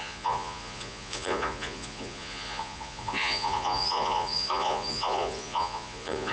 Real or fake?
fake